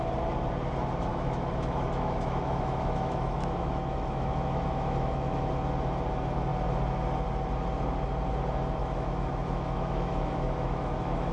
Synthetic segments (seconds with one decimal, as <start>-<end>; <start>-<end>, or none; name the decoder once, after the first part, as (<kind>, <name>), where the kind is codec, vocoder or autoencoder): 1.1-5.5 (autoencoder, DAC-VAE); 8.8-11.3